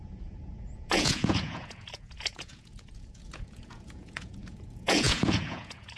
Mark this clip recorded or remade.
remade